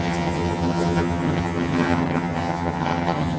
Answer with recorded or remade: remade